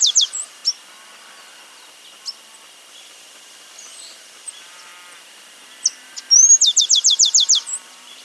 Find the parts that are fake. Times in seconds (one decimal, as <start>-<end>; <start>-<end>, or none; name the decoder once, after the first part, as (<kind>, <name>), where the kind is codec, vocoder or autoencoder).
0.0-0.6 (vocoder, BigVGAN v2); 2.9-4.9; 6.8-8.2